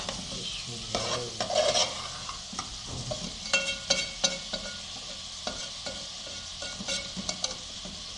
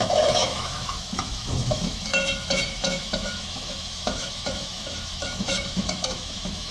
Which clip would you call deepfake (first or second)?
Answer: second